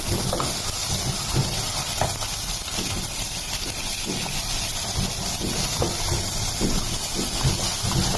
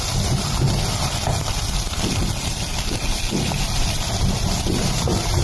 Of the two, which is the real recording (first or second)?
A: first